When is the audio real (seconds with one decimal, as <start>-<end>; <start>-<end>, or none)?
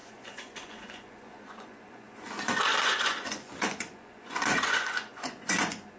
none